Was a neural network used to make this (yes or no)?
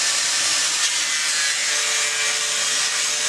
no